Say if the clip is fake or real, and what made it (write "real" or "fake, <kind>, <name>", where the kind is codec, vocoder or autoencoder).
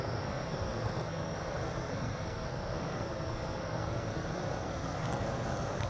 fake, codec, SNAC